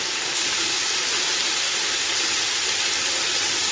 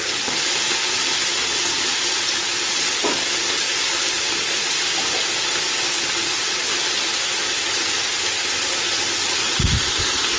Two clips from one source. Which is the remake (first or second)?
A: first